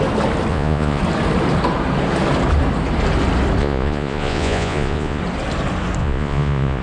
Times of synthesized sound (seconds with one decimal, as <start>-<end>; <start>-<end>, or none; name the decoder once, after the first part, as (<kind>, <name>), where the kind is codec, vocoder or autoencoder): 0.5-1.0 (vocoder, Vocos); 3.6-5.2; 6.0-6.8